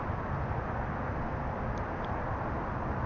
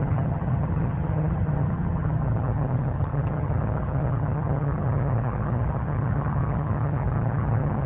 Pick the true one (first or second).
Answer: first